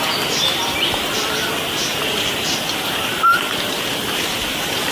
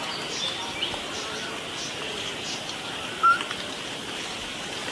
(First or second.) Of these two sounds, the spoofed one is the first